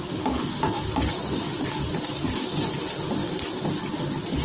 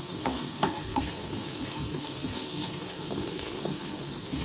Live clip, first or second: first